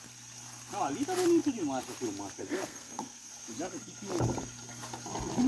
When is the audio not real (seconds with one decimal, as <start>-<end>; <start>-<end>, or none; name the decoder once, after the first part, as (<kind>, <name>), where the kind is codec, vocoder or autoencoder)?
2.4-3.3 (codec, SNAC)